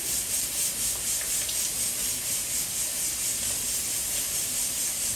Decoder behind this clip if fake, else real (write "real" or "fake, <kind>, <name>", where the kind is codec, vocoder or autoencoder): real